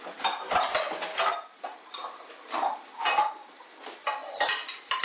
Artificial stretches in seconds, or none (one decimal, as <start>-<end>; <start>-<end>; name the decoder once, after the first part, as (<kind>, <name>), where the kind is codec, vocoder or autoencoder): none